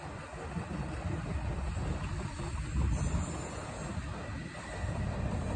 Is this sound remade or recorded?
recorded